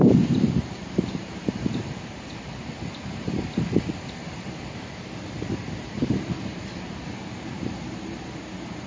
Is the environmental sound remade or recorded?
remade